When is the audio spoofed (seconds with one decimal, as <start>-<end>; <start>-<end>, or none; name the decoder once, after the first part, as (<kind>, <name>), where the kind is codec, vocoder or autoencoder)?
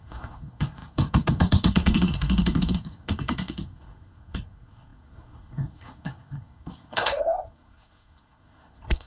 0.0-9.1 (codec, SNAC)